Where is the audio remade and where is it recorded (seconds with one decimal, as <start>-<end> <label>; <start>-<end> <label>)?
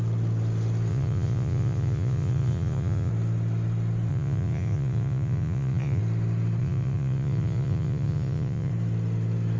0.0-0.9 recorded; 0.9-3.1 remade; 3.1-4.1 recorded; 4.1-6.0 remade; 6.0-6.6 recorded; 6.6-8.7 remade; 8.7-9.6 recorded